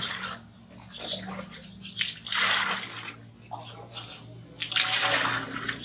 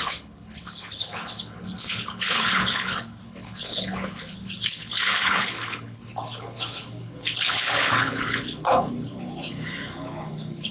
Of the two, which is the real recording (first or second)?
first